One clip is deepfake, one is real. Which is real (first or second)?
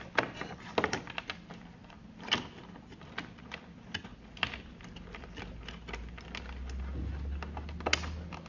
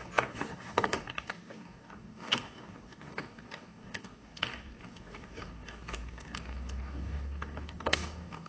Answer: first